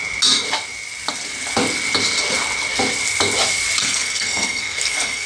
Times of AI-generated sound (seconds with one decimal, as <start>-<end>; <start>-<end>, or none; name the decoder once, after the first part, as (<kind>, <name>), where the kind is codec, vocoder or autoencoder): 3.8-5.3 (codec, SNAC)